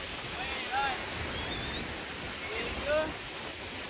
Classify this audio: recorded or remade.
recorded